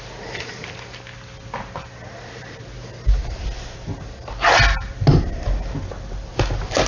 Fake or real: real